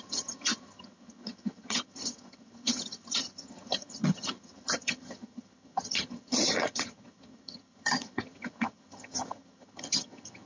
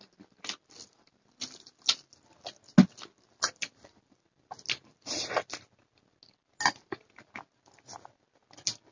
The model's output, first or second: first